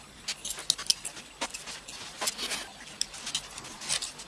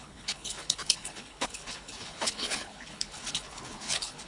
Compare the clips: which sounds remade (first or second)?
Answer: second